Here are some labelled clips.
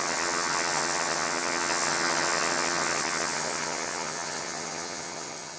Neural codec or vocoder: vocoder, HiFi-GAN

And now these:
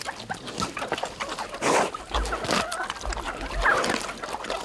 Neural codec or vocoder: none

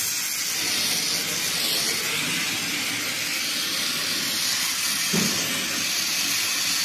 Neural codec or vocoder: none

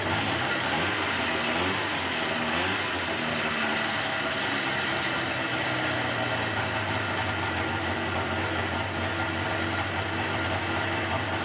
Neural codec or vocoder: none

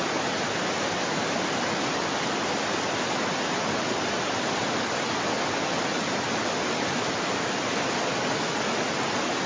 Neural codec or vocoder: none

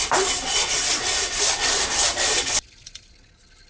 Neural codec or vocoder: none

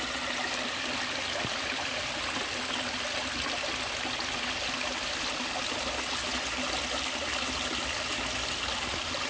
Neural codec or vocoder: none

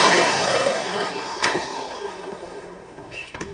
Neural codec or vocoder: codec, SNAC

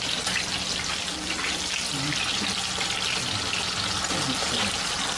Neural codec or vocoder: none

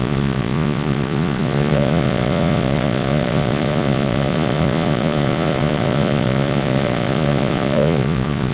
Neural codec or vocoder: vocoder, Vocos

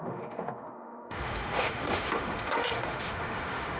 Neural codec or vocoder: autoencoder, DAC-VAE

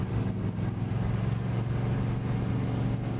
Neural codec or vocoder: none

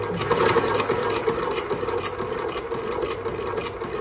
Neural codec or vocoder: none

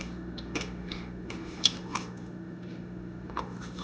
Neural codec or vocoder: autoencoder, DAC-VAE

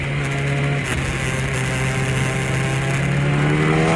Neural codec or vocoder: none